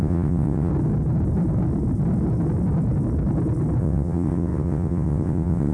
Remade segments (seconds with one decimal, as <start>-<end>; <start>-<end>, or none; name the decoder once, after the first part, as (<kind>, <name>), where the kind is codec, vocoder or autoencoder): 0.0-0.7 (vocoder, WaveNeXt); 3.8-5.7